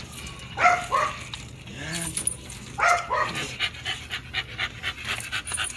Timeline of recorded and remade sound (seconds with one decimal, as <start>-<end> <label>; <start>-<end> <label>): 0.0-5.8 recorded